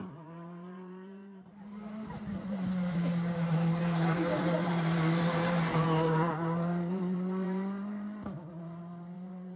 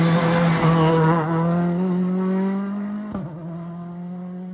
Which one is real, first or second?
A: second